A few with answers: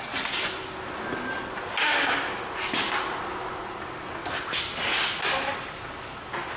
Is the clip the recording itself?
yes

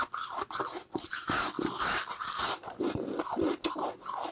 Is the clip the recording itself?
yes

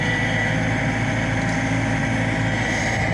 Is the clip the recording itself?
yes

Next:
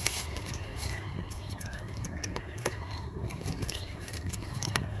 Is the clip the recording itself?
no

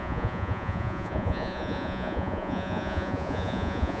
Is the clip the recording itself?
no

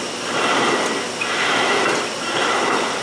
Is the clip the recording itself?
yes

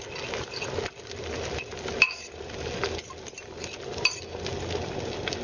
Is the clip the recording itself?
yes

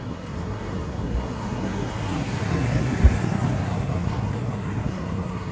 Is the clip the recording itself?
no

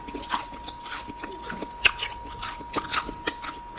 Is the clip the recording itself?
yes